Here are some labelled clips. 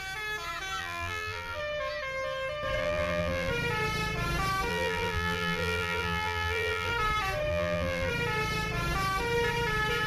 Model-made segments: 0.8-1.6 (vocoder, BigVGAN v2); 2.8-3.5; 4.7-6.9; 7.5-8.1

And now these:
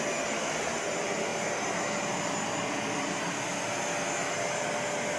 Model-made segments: none

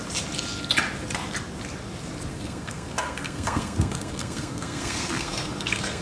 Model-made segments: 2.3-6.0 (codec, SNAC)

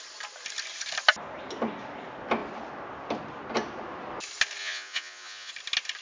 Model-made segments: 4.6-5.5 (vocoder, Vocos)

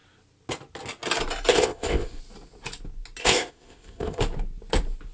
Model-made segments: 1.5-2.2 (codec, ZipCodec); 3.2-4.2